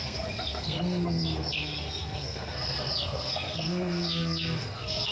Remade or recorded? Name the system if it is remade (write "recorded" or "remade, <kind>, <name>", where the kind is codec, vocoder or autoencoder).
remade, codec, SNAC